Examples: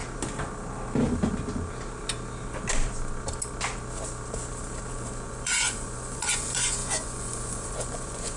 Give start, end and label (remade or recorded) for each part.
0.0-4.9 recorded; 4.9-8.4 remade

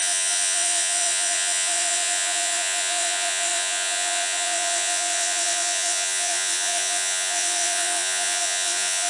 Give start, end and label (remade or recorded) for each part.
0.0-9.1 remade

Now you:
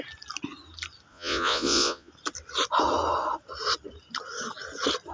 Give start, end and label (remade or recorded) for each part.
0.0-1.1 recorded; 1.1-2.1 remade; 2.1-5.1 recorded

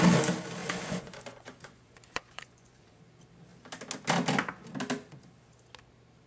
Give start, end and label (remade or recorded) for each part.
0.0-0.6 recorded; 0.6-3.0 remade; 3.0-6.3 recorded

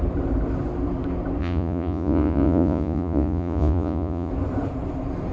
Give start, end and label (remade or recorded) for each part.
0.0-1.4 recorded; 1.4-4.3 remade; 4.3-5.3 recorded

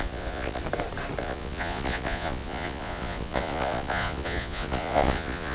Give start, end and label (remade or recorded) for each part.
0.0-0.6 remade; 0.6-1.2 recorded; 1.2-5.5 remade